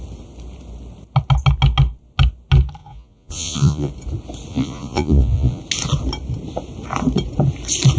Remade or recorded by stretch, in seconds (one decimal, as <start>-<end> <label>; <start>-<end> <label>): 0.0-2.8 recorded; 2.8-3.9 remade; 3.9-4.5 recorded; 4.5-5.6 remade; 5.6-8.0 recorded